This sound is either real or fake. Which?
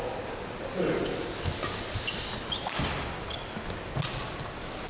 real